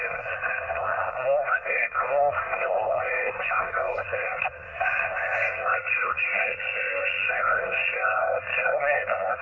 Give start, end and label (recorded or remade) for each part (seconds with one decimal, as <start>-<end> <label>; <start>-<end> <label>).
0.0-9.4 remade